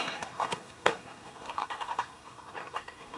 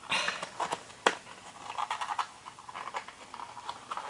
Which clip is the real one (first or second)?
second